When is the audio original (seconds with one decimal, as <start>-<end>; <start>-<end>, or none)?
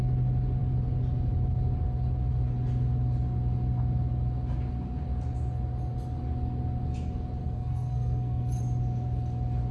0.0-7.4; 8.6-9.7